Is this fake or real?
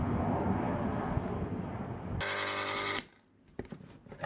real